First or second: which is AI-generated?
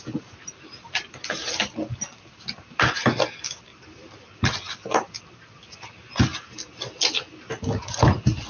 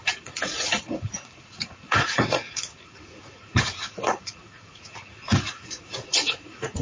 second